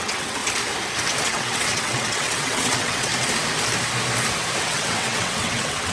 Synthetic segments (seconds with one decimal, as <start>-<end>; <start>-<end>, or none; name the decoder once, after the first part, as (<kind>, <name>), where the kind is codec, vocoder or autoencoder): 0.0-0.4 (vocoder, WaveNeXt); 1.2-3.1; 4.6-5.9